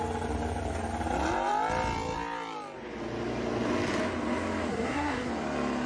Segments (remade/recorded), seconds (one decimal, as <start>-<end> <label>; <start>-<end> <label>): 0.0-4.7 recorded; 4.7-5.3 remade; 5.3-5.9 recorded